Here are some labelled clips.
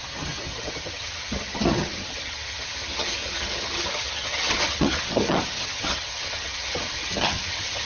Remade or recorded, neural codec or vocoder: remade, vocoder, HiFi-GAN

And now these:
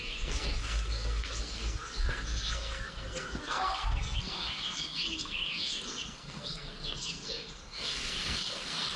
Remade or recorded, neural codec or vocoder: remade, codec, SNAC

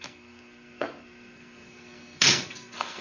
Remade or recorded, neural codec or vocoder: remade, codec, SNAC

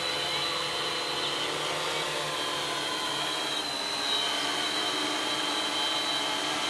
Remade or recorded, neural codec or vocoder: recorded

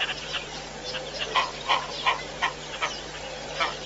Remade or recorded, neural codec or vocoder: recorded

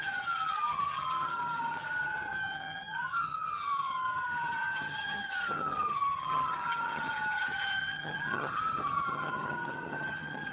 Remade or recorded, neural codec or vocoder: remade, vocoder, HiFi-GAN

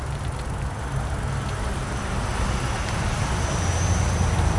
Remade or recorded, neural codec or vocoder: recorded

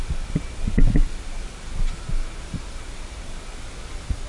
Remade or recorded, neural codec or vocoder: recorded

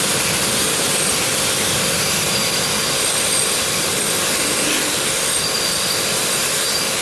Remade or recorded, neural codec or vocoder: remade, vocoder, BigVGAN v2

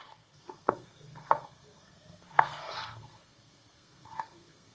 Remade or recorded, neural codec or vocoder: remade, codec, SNAC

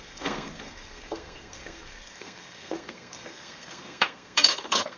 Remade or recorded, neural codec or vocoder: remade, codec, SNAC